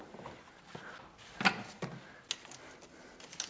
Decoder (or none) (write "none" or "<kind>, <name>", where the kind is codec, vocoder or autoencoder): none